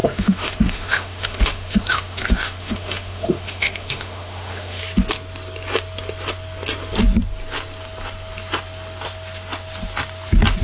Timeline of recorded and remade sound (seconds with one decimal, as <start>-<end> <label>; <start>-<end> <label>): 0.0-4.8 remade; 4.8-10.6 recorded